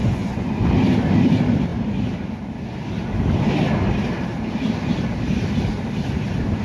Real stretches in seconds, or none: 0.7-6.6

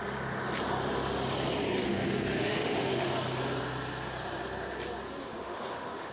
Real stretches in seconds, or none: 0.0-1.8; 3.1-5.2

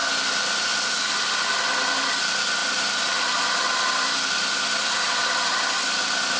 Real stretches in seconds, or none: 0.0-6.4

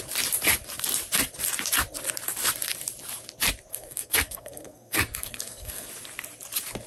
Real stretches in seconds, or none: 0.0-3.7; 5.9-6.9